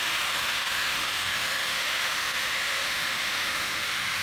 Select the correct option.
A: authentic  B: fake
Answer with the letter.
B